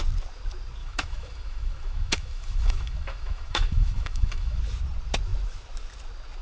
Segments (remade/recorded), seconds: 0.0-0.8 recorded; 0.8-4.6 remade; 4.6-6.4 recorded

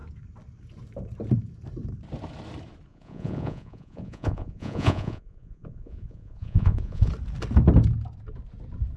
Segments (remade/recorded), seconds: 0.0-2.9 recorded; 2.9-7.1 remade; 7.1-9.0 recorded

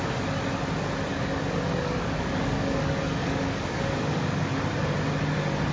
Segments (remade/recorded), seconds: 0.0-1.1 recorded; 1.1-4.5 remade; 4.5-5.7 recorded

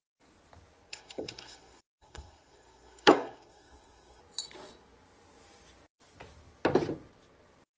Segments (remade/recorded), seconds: 0.0-0.9 recorded; 0.9-4.2 remade; 4.2-7.8 recorded

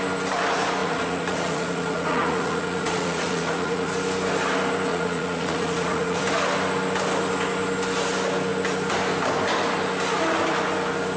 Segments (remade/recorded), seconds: 0.0-0.8 recorded; 0.8-3.9 remade; 3.9-4.9 recorded; 4.9-6.2 remade; 6.2-11.2 recorded

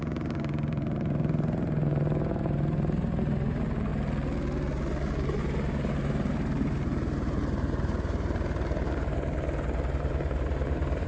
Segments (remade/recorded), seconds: 0.0-3.9 remade; 3.9-5.1 recorded; 5.1-11.1 remade

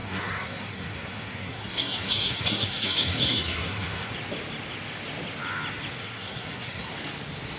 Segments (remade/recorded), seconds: 0.0-4.1 remade; 4.1-6.0 recorded; 6.0-6.9 remade; 6.9-7.6 recorded